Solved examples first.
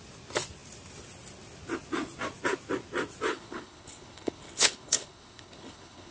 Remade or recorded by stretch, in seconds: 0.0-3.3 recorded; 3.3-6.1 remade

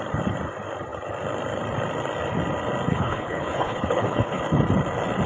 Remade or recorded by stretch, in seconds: 0.0-2.9 recorded; 2.9-4.4 remade; 4.4-5.3 recorded